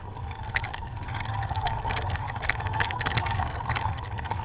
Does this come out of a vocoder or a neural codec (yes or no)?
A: yes